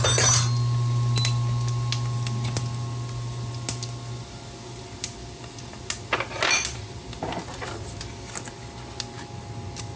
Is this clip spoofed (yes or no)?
no